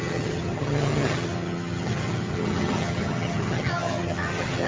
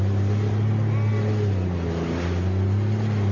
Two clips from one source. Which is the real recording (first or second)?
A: second